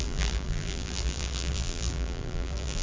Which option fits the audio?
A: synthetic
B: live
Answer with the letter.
A